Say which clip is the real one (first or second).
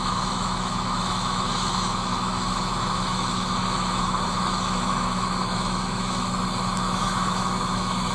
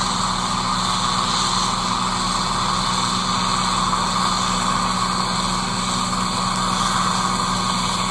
second